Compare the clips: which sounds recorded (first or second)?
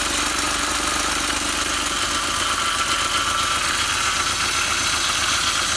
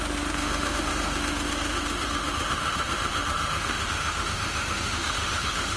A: first